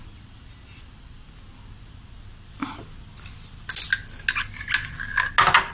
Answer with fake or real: real